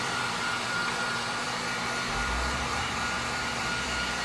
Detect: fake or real fake